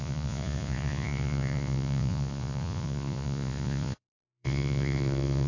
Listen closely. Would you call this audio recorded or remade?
remade